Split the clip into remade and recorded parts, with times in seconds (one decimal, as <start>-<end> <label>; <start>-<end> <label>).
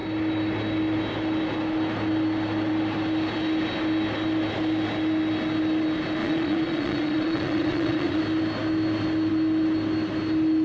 0.0-6.2 recorded; 6.2-8.2 remade; 8.2-10.6 recorded